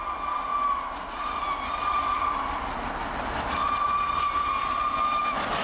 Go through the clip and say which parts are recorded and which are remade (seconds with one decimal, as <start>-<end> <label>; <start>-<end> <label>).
0.0-5.6 recorded